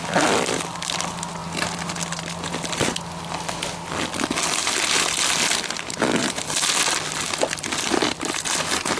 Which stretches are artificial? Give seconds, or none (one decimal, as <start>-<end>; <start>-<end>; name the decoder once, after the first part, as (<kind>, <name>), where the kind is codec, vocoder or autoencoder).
none